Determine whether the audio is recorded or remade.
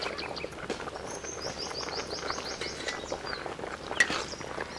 recorded